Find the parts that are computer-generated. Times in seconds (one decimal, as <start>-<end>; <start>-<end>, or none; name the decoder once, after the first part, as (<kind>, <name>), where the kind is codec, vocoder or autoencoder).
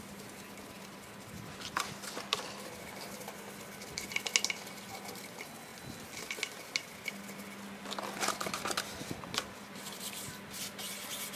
none